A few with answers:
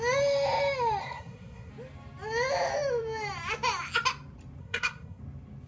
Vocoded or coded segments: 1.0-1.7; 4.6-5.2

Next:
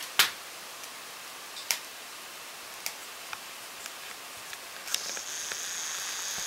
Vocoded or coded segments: 1.6-2.5; 3.0-4.1

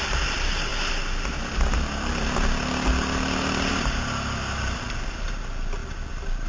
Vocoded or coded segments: none

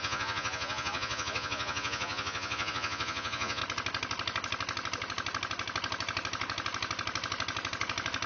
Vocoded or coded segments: 0.0-3.6

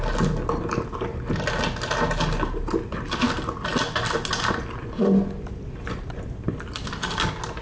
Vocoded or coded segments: none